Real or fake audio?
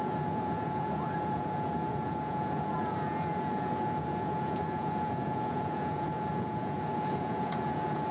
fake